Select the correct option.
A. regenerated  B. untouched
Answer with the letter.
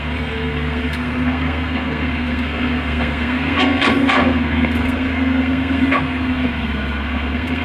A